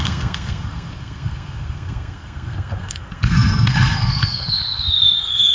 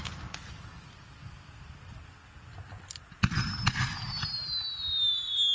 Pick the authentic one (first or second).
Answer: second